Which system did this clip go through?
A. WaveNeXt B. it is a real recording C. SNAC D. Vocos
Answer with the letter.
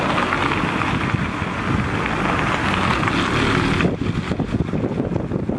B